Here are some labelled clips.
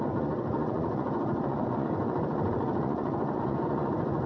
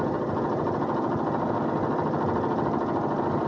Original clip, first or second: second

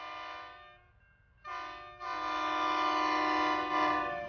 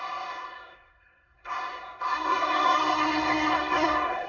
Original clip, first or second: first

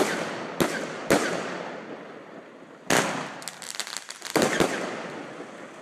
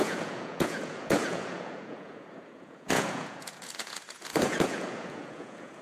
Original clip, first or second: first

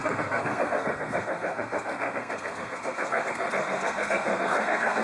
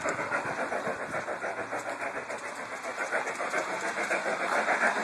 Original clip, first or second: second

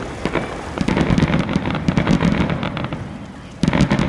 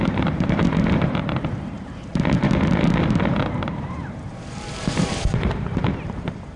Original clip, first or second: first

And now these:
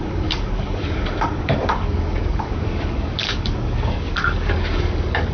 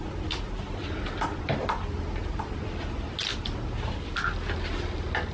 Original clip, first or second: second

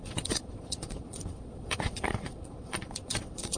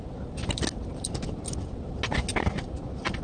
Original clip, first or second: second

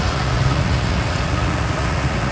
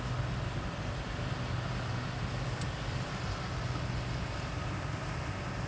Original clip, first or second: second